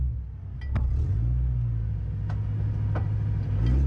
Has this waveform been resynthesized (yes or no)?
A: no